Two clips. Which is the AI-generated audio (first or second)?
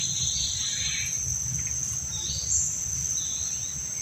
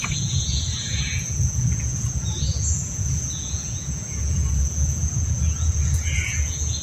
second